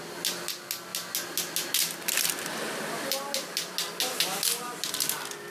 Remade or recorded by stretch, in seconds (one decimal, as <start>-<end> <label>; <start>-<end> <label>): 0.0-5.5 recorded

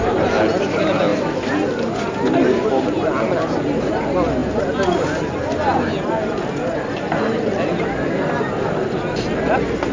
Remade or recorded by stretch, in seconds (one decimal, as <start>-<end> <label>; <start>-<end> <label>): 0.0-9.9 recorded